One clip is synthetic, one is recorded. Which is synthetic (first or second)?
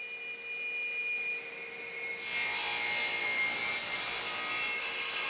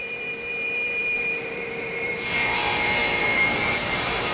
second